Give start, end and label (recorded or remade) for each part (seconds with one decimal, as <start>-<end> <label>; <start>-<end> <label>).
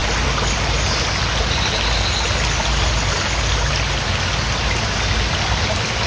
0.0-6.1 recorded